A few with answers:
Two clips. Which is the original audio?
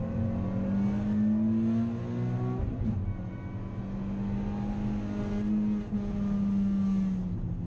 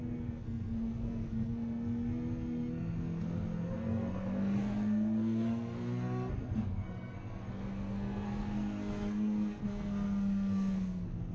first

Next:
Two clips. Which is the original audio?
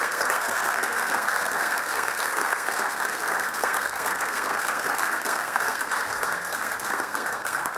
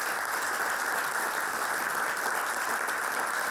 second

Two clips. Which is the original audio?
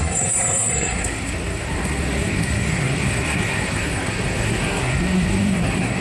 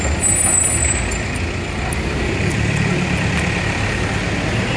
second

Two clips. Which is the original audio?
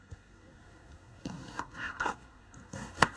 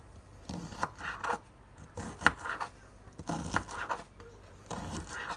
second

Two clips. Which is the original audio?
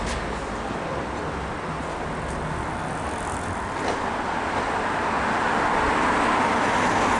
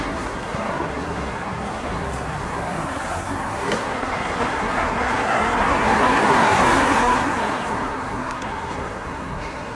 first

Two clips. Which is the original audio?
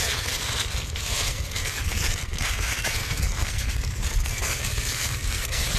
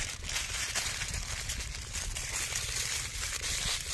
second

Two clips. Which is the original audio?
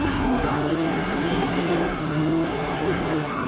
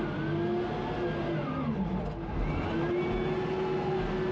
second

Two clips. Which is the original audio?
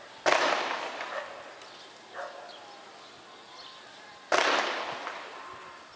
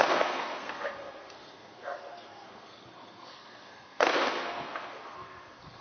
first